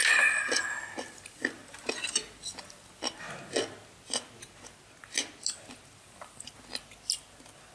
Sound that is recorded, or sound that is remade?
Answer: recorded